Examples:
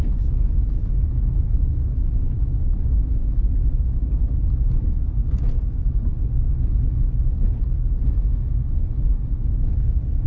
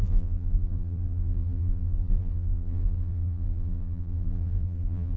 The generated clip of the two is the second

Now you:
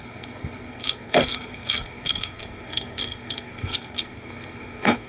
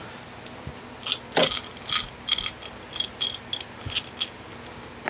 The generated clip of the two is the first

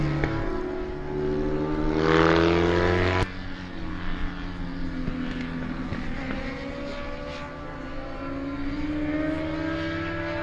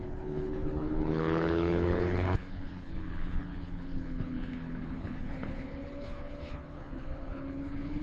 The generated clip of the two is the second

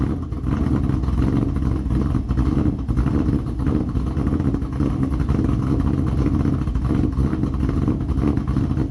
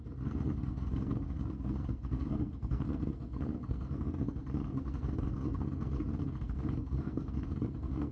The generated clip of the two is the second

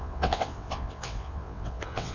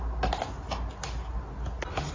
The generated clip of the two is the first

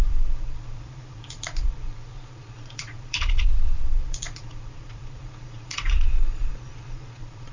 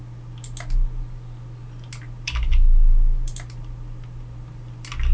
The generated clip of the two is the first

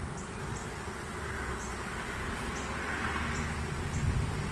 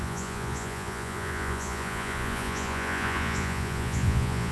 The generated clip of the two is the second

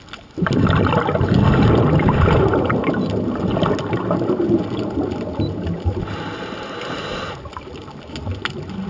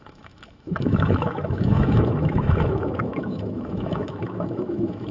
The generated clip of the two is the second